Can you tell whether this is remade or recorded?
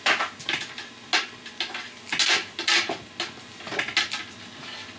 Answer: recorded